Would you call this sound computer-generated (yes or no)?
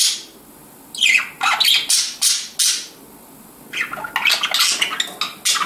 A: no